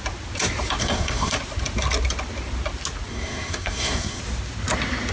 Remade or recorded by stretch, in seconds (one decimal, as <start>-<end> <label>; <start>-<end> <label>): 0.0-0.8 recorded; 0.8-1.3 remade; 1.3-3.1 recorded; 3.1-4.2 remade; 4.2-5.1 recorded